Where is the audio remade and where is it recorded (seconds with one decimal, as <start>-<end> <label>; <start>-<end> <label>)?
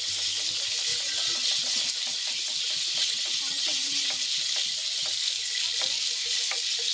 0.0-0.9 recorded; 0.9-1.8 remade; 1.8-3.0 recorded; 3.0-4.1 remade; 4.1-6.9 recorded